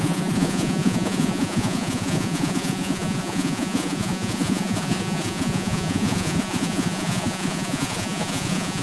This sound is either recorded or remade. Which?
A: remade